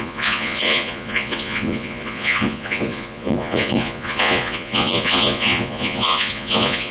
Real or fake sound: fake